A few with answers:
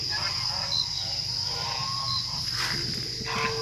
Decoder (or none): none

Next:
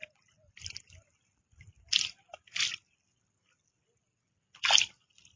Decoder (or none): none